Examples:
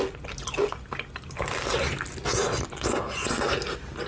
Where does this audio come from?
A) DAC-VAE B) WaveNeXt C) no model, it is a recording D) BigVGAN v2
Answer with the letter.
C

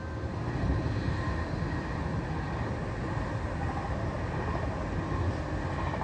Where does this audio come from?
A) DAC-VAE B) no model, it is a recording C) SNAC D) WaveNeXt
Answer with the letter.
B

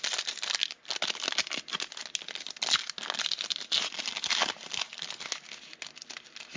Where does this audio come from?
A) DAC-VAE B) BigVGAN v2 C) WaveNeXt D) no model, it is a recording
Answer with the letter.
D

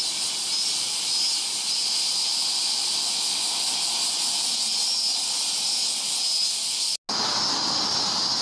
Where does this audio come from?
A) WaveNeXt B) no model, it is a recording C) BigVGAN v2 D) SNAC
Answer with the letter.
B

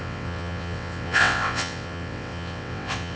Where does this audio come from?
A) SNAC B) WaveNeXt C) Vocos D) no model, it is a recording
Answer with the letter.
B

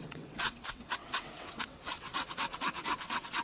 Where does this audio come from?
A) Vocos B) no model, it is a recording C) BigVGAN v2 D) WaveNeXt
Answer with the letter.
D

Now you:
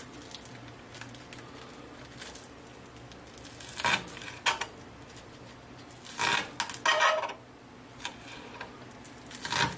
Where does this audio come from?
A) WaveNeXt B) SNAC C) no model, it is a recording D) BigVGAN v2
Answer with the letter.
C